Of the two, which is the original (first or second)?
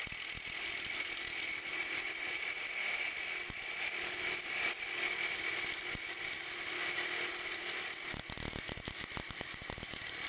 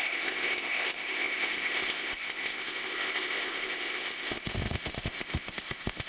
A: first